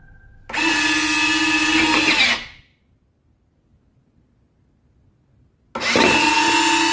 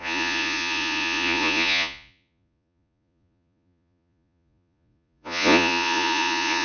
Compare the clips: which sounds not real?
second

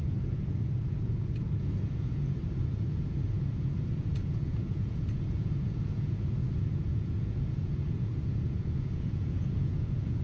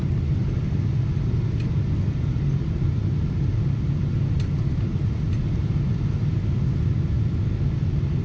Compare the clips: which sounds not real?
first